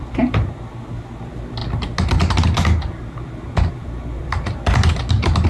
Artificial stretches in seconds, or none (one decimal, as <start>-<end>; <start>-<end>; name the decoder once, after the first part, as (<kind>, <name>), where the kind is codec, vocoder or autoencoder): 0.0-1.6 (vocoder, BigVGAN v2); 3.7-5.5